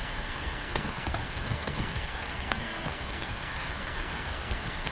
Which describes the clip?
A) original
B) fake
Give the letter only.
B